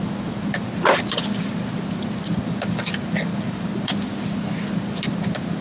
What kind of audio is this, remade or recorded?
recorded